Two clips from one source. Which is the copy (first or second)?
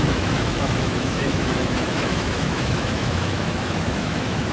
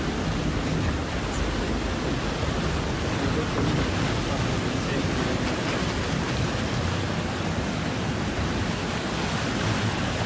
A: first